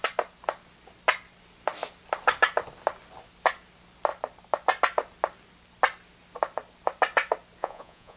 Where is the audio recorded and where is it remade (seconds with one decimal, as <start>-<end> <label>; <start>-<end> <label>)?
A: 0.0-7.6 recorded; 7.6-8.2 remade